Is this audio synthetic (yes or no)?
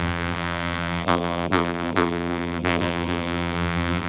yes